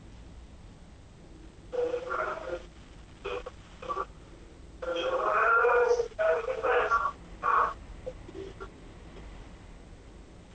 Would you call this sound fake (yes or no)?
no